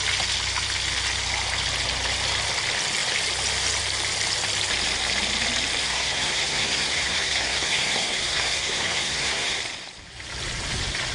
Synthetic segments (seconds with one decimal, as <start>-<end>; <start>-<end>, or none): 5.8-9.6

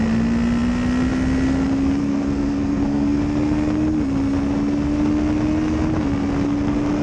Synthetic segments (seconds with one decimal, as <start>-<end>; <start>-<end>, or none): 2.0-3.2